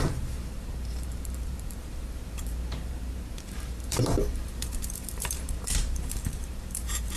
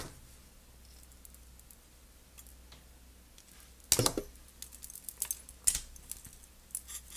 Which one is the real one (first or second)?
second